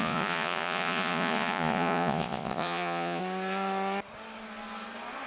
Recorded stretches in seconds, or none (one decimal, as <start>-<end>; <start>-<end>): 3.2-5.3